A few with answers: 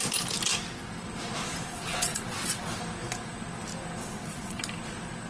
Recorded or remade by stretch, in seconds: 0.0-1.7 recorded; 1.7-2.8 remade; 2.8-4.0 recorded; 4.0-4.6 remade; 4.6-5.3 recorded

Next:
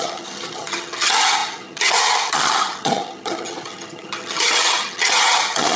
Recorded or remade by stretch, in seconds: 0.0-5.8 remade

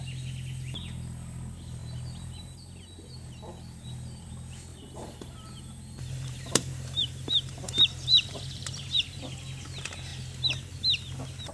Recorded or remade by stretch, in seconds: 0.0-4.7 recorded; 4.7-9.2 remade; 9.2-11.5 recorded

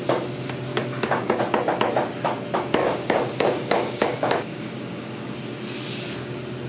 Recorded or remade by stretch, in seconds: 0.0-0.7 recorded; 0.7-1.4 remade; 1.4-2.8 recorded; 2.8-5.4 remade; 5.4-6.7 recorded

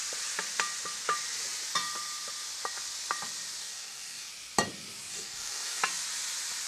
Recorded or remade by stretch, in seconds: 0.0-3.6 recorded; 3.6-4.3 remade; 4.3-5.1 recorded; 5.1-5.8 remade; 5.8-6.7 recorded

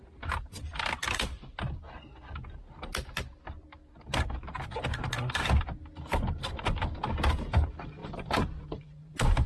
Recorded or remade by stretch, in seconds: 0.0-8.0 recorded; 8.0-9.5 remade